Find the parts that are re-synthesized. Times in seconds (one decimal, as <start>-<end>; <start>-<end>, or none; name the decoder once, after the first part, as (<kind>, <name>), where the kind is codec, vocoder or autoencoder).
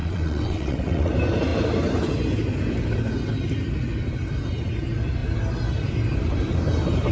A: 0.0-1.1 (vocoder, WaveNeXt)